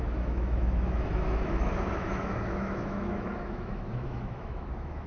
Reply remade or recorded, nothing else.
remade